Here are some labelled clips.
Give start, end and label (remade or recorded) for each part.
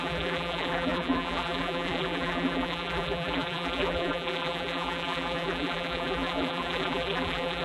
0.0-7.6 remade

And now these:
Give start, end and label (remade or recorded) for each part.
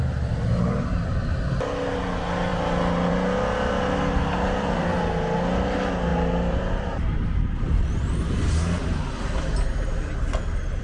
0.0-6.1 recorded; 6.1-9.0 remade; 9.0-10.8 recorded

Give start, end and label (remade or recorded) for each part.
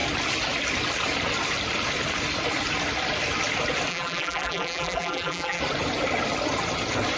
0.0-3.9 recorded; 3.9-5.6 remade; 5.6-7.2 recorded